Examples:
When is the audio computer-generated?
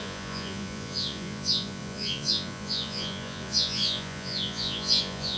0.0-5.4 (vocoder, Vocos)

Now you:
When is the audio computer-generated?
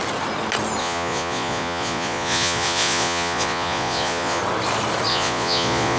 0.8-4.4 (vocoder, Vocos); 5.1-6.0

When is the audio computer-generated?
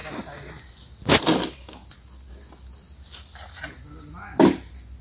none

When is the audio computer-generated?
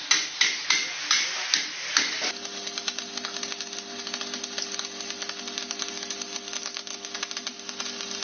none